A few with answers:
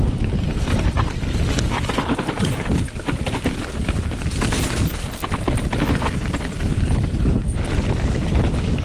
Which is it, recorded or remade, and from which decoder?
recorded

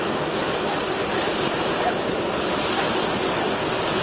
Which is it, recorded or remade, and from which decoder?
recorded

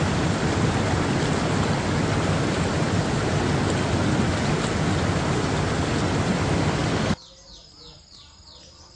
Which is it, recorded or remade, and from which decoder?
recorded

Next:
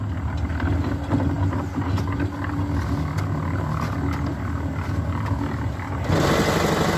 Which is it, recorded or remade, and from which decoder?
recorded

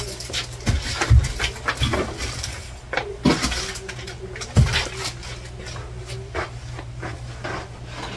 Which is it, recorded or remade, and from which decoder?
recorded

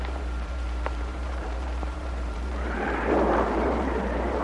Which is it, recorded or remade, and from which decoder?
remade, vocoder, BigVGAN v2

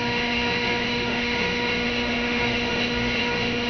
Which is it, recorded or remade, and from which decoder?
remade, autoencoder, DAC-VAE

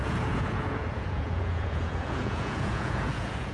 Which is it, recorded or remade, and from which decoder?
remade, vocoder, Vocos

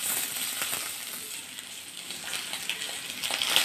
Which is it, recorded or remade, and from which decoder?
recorded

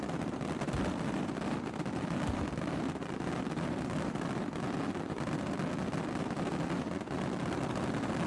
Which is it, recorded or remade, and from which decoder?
remade, vocoder, BigVGAN v2